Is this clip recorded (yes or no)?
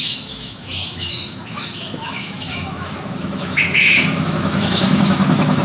no